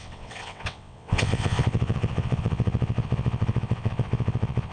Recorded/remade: remade